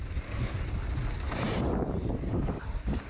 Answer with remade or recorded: recorded